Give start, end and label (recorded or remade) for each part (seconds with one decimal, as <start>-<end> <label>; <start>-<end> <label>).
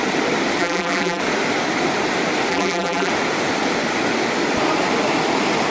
0.0-0.6 recorded; 0.6-1.2 remade; 1.2-2.5 recorded; 2.5-3.1 remade; 3.1-5.7 recorded